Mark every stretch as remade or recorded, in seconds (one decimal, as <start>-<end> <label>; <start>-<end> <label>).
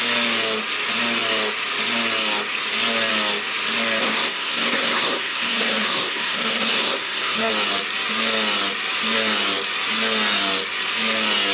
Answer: 0.0-4.0 recorded; 4.0-7.5 remade; 7.5-11.5 recorded